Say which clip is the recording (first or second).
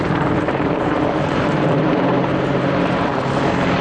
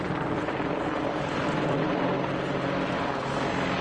second